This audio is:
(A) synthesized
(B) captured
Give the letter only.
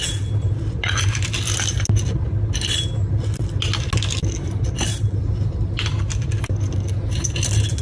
B